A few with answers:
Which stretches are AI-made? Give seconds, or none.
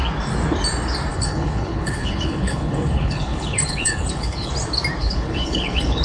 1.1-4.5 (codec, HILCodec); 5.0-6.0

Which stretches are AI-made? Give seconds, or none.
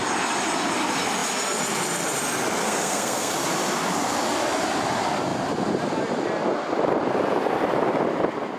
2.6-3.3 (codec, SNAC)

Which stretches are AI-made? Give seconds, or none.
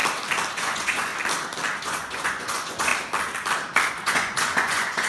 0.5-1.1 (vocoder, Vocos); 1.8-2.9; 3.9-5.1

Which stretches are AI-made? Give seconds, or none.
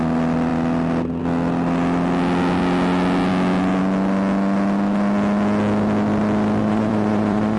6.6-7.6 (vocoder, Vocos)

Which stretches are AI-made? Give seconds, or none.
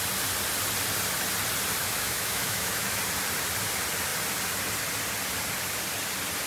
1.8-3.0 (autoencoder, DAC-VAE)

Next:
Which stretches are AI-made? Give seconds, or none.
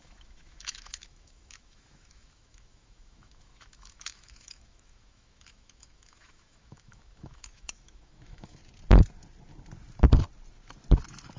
0.0-8.6 (autoencoder, DAC-VAE)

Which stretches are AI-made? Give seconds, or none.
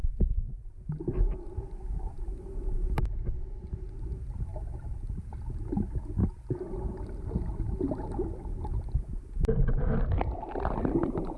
4.5-5.2 (vocoder, BigVGAN v2)